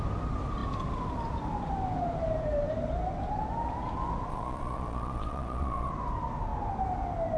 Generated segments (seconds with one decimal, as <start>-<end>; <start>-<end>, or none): 4.3-5.9